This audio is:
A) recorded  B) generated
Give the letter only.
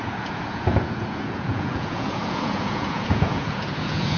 B